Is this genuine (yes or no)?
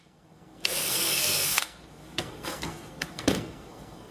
no